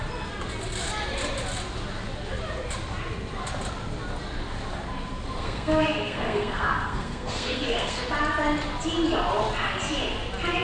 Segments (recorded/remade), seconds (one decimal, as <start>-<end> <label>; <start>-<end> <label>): 0.0-5.4 recorded; 5.4-8.0 remade; 8.0-10.6 recorded